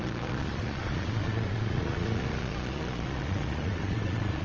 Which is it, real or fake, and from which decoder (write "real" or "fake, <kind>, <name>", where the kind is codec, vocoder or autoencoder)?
fake, vocoder, Vocos